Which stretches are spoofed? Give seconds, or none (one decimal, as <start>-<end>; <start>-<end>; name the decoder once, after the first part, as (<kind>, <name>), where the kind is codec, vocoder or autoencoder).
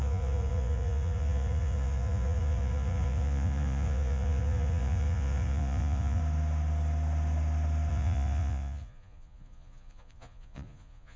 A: 0.0-6.2 (vocoder, Vocos); 7.9-11.2